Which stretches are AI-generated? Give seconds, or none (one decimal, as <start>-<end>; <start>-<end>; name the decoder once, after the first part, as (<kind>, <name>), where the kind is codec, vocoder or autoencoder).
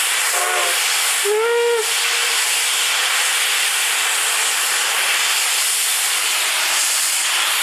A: 2.2-4.5 (vocoder, BigVGAN v2)